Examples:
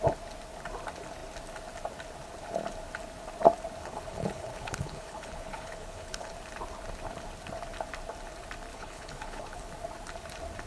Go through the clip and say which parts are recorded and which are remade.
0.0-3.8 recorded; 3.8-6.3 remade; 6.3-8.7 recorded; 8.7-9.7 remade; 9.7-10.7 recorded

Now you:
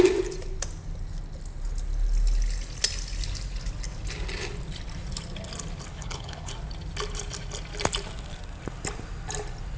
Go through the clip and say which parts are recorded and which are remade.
0.0-5.9 recorded; 5.9-6.5 remade; 6.5-9.8 recorded

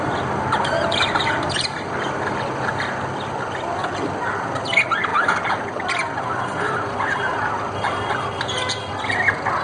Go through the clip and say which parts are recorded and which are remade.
0.0-9.6 recorded